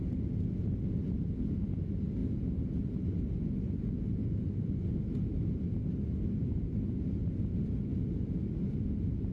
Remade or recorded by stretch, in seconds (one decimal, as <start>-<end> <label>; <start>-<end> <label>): 0.0-4.2 recorded; 4.2-4.7 remade; 4.7-9.3 recorded